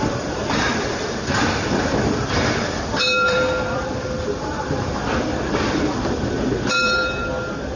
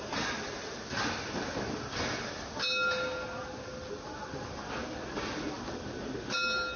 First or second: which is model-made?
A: first